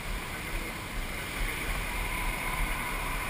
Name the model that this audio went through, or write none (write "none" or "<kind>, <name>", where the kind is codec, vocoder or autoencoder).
vocoder, BigVGAN v2